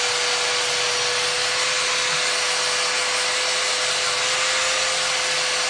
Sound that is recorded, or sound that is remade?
recorded